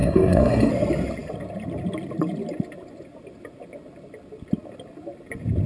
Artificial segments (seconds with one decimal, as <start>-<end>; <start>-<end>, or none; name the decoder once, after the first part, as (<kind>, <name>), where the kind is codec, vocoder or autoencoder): 0.0-0.7 (codec, SNAC)